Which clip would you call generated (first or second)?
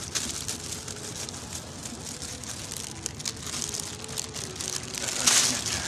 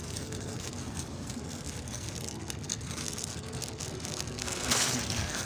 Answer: second